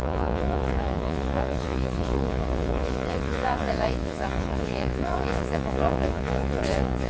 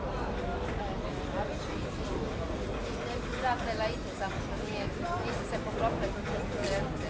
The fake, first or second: first